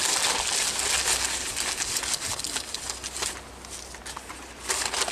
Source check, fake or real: real